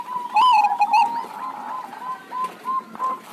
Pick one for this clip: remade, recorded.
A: recorded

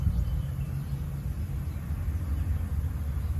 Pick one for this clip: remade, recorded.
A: recorded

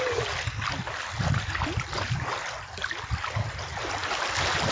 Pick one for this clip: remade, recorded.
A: recorded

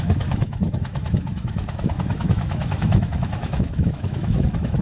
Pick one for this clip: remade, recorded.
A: remade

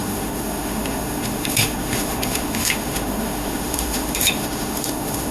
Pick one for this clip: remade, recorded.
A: remade